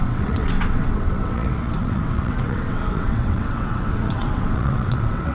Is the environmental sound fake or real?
fake